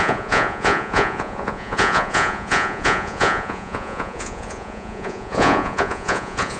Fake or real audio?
fake